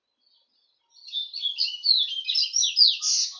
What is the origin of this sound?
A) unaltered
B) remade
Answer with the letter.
A